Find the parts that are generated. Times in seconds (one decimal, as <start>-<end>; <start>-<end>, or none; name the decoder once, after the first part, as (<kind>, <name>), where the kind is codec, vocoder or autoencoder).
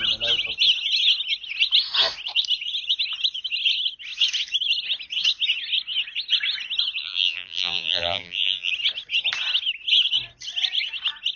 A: 7.0-8.7 (vocoder, BigVGAN v2)